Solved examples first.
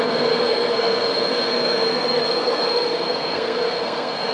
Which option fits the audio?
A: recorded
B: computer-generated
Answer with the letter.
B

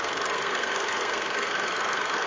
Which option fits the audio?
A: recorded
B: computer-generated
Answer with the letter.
B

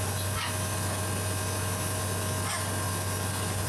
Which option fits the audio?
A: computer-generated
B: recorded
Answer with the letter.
B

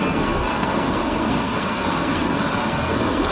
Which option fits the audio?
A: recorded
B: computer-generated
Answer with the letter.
B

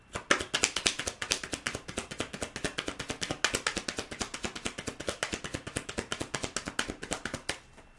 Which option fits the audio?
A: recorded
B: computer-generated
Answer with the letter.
A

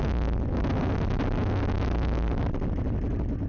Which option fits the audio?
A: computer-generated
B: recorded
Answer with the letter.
B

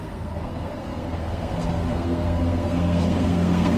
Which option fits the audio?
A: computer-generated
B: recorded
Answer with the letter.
A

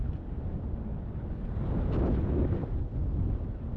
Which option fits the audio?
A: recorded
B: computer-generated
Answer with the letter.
A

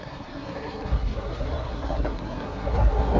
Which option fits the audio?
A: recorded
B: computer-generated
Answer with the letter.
B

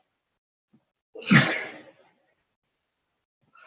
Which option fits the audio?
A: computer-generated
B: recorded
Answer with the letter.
B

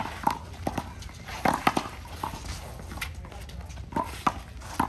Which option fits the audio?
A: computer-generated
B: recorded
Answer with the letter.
B